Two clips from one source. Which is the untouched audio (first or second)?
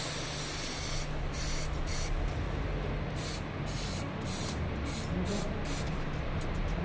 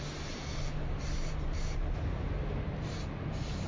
first